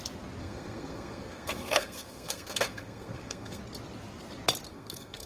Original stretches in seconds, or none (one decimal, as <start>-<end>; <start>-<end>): 0.0-0.4; 3.6-4.7